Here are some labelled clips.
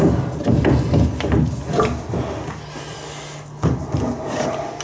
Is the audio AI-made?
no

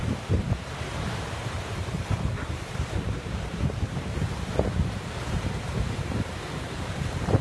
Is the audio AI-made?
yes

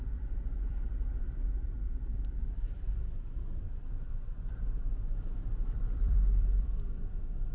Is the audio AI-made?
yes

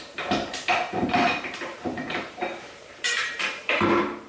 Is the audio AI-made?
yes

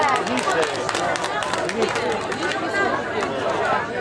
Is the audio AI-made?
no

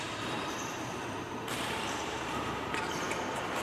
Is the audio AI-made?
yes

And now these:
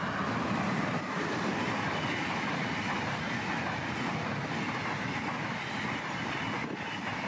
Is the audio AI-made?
no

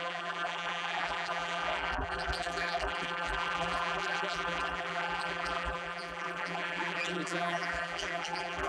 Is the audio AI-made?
yes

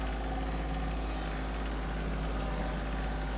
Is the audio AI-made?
no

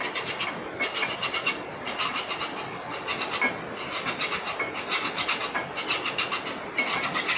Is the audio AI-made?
no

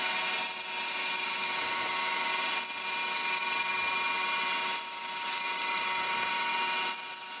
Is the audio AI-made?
no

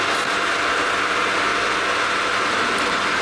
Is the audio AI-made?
no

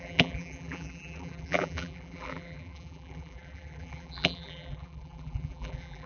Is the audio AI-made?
yes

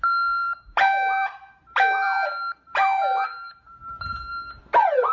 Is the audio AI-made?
yes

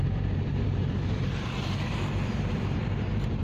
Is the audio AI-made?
yes